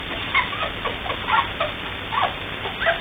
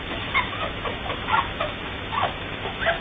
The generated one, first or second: second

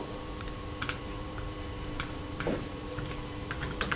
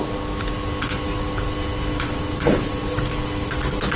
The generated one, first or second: first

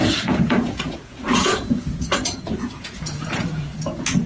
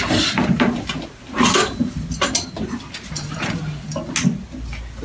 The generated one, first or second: first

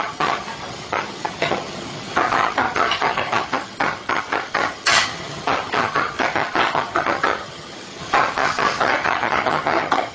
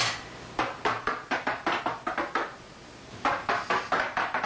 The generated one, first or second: first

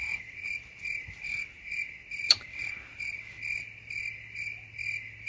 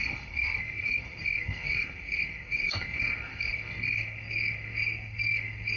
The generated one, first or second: second